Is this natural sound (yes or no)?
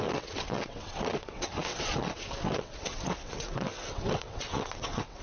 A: no